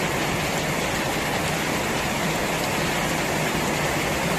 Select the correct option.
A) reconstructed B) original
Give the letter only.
B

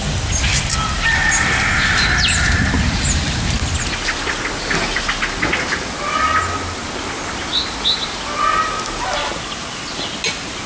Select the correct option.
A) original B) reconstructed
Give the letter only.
A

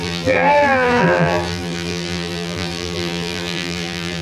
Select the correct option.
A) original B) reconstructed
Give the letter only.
B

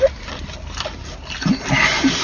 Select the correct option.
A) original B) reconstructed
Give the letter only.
A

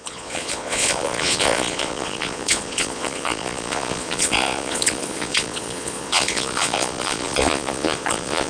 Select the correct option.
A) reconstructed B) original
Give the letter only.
A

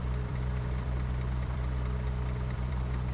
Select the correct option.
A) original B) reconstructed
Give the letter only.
B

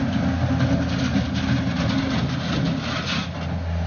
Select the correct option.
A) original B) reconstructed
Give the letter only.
A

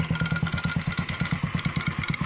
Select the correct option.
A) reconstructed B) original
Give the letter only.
B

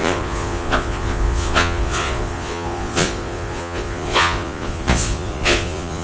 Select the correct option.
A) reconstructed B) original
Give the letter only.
A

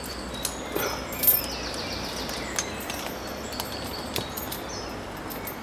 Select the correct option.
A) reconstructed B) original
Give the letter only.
B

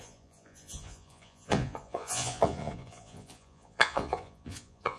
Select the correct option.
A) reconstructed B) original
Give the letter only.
A